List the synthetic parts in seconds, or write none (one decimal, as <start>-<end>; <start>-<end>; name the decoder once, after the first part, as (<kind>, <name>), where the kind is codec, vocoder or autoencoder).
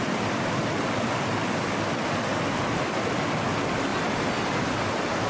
none